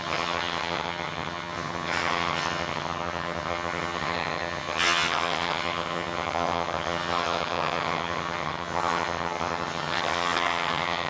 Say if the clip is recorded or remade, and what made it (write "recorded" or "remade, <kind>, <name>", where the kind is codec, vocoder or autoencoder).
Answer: remade, vocoder, HiFi-GAN